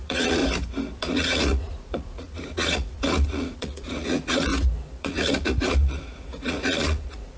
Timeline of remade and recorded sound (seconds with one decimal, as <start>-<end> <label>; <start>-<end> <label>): 0.0-0.4 remade; 0.4-1.0 recorded; 1.0-4.5 remade; 4.5-5.0 recorded; 5.0-7.4 remade